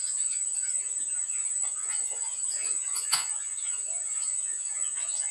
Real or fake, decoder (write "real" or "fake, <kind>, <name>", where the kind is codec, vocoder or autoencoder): fake, vocoder, Vocos